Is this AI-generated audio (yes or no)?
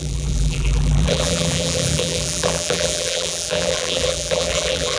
yes